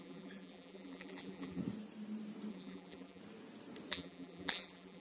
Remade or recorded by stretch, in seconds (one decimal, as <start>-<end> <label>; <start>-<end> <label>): 0.0-1.6 remade; 1.6-2.5 recorded; 2.5-3.2 remade; 3.2-3.9 recorded; 3.9-5.0 remade